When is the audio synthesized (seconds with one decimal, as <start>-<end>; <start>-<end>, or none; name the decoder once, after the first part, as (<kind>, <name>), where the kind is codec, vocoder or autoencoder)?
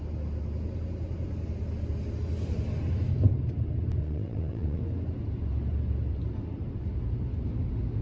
4.0-4.8 (vocoder, WaveNeXt)